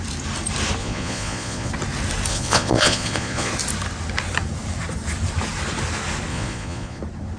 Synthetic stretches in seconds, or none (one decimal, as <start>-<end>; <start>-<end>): 0.8-1.7; 2.3-3.5; 6.3-7.0